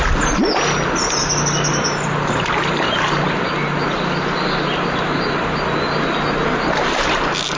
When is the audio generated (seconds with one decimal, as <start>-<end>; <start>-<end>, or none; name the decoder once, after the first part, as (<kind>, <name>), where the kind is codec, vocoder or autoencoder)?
none